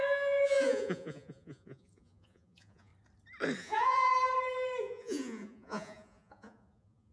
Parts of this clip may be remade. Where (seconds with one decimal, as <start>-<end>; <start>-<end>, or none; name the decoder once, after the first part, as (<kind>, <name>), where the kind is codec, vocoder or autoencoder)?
0.0-2.9 (vocoder, Vocos); 3.6-4.1; 4.8-7.1